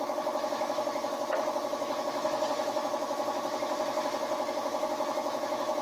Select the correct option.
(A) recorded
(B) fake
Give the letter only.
B